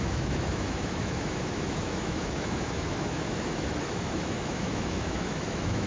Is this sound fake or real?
fake